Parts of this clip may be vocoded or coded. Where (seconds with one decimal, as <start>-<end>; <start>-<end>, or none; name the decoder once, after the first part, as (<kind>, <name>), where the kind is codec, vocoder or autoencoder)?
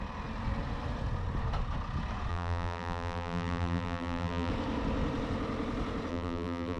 2.3-4.5 (vocoder, BigVGAN v2); 6.1-6.8